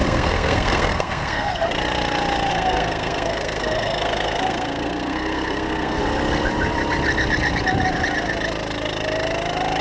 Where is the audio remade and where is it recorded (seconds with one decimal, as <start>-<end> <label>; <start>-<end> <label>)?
0.0-1.5 remade; 1.5-2.5 recorded; 2.5-6.0 remade; 6.0-9.8 recorded